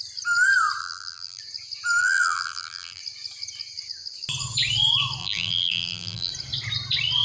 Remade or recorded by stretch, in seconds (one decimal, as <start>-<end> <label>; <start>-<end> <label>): 0.0-0.8 recorded; 0.8-1.4 remade; 1.4-2.0 recorded; 2.0-3.0 remade; 3.0-5.2 recorded; 5.2-6.3 remade; 6.3-7.2 recorded